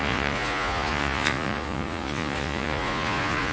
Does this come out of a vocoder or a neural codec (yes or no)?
yes